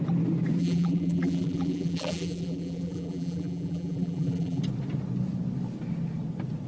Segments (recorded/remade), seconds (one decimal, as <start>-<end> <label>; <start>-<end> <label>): 0.0-0.6 recorded; 0.6-4.6 remade; 4.6-6.7 recorded